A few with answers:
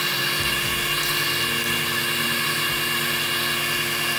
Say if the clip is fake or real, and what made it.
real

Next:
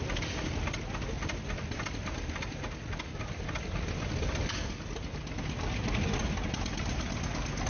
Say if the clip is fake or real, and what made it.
real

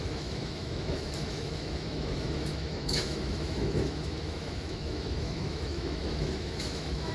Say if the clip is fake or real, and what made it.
fake, autoencoder, DAC-VAE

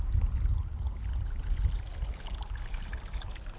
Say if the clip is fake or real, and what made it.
real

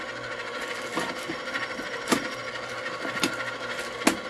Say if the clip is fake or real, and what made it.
real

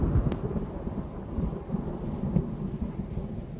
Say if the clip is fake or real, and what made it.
real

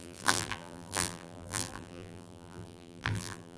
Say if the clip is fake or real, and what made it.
fake, vocoder, BigVGAN v2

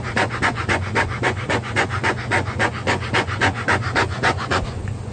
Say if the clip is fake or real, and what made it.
fake, vocoder, Vocos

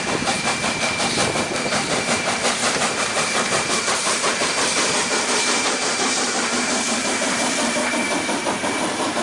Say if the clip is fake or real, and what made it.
fake, vocoder, BigVGAN v2